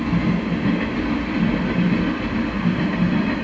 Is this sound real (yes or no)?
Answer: yes